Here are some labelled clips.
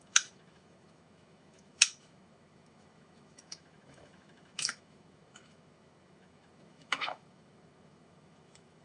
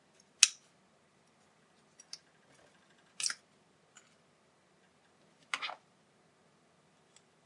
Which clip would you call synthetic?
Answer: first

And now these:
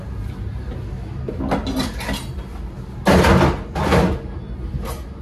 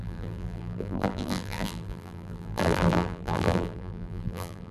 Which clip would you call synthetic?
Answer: second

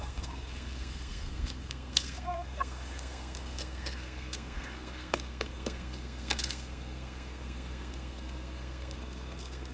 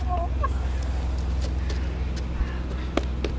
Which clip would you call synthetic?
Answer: first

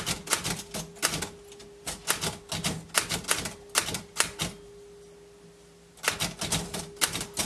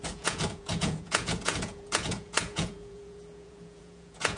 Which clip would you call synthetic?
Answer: second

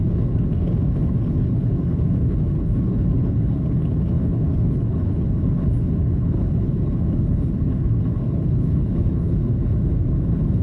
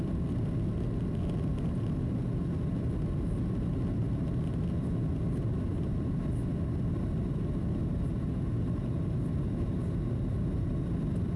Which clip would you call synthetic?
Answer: first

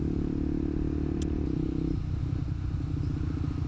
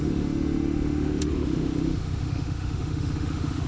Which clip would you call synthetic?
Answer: second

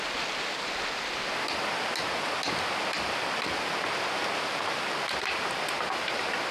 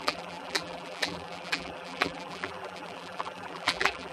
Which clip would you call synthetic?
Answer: second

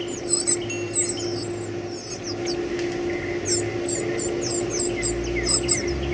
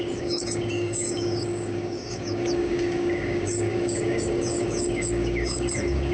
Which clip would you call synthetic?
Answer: second